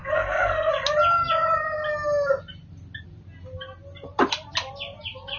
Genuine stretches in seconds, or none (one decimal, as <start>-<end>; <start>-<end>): 0.7-5.4